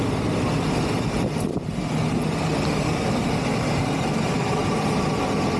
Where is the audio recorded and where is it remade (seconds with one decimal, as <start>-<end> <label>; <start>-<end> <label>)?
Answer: 0.0-3.2 recorded; 3.2-4.6 remade; 4.6-5.6 recorded